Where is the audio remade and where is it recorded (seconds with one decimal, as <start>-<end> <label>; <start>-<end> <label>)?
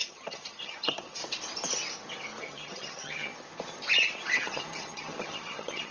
0.0-1.2 remade; 1.2-2.4 recorded; 2.4-3.3 remade; 3.3-4.3 recorded; 4.3-5.9 remade